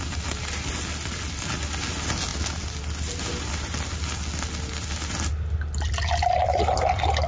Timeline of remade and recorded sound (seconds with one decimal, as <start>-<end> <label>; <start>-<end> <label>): 0.0-7.3 recorded